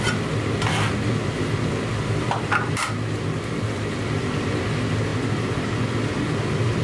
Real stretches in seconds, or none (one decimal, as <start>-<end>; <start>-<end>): 0.0-6.8